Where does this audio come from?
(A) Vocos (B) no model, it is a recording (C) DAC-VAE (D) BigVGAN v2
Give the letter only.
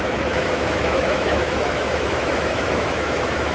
C